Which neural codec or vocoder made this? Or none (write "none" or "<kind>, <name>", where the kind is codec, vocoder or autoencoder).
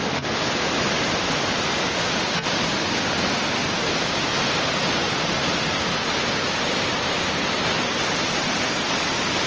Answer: none